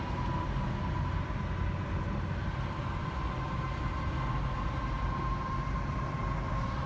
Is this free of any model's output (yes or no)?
yes